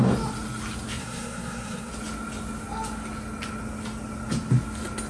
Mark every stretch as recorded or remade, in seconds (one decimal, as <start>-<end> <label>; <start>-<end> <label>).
0.0-1.0 recorded; 1.0-1.9 remade; 1.9-5.1 recorded